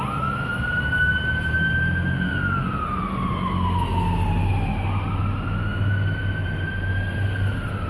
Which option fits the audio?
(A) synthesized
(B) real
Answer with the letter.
B